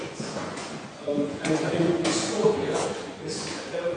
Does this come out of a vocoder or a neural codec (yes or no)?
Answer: yes